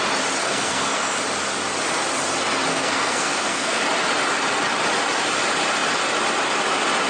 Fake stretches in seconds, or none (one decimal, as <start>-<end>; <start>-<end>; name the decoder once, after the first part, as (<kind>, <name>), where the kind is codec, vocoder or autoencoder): 0.4-1.2 (codec, SNAC); 2.7-3.8